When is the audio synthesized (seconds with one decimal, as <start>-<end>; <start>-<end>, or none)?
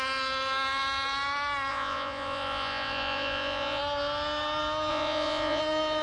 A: 1.7-3.8; 4.9-5.6